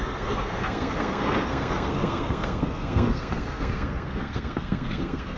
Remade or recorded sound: remade